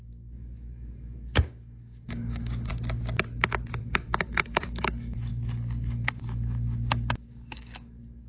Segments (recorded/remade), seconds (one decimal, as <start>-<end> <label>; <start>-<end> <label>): 0.0-2.7 remade; 2.7-3.8 recorded; 3.8-8.3 remade